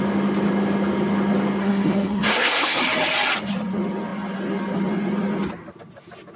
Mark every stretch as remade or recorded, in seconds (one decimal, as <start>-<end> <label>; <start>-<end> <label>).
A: 0.0-1.6 recorded; 1.6-2.8 remade; 2.8-6.4 recorded